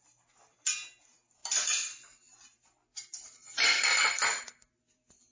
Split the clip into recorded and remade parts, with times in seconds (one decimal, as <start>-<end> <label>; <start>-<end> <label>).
0.0-1.4 recorded; 1.4-2.3 remade; 2.3-2.9 recorded; 2.9-4.4 remade; 4.4-5.3 recorded